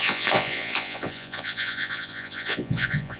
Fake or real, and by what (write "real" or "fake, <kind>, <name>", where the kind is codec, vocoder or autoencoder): fake, vocoder, Vocos